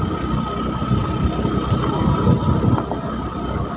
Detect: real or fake real